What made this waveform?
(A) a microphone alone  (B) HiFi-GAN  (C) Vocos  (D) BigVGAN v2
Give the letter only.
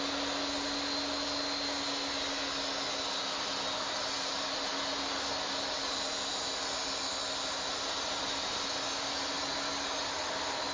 A